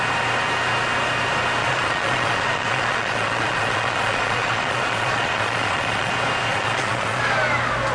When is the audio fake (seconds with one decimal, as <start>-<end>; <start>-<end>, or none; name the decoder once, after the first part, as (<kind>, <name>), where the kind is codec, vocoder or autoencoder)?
1.6-6.1 (vocoder, Vocos); 6.5-7.2